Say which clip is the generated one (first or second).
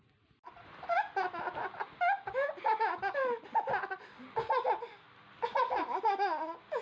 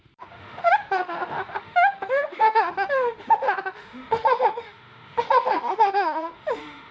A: second